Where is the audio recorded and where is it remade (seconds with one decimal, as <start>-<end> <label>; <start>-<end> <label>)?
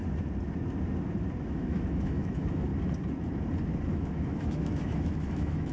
0.0-1.4 recorded; 1.4-2.7 remade; 2.7-3.9 recorded; 3.9-5.7 remade